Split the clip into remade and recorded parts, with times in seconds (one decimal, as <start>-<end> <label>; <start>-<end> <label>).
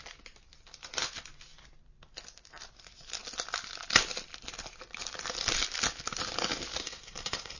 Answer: 0.0-6.8 recorded; 6.8-7.6 remade